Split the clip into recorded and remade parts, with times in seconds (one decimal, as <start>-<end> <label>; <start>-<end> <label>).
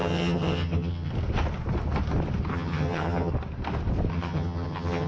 0.0-1.1 remade; 1.1-2.5 recorded; 2.5-3.3 remade; 3.3-4.1 recorded; 4.1-5.1 remade